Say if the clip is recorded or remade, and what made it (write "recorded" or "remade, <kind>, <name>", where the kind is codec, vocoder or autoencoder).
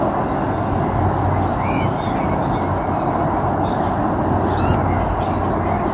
recorded